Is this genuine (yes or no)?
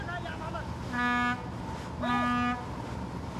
yes